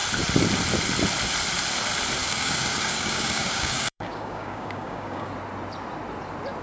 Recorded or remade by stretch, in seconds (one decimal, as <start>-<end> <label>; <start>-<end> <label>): 0.0-2.2 recorded; 2.2-5.3 remade; 5.3-6.6 recorded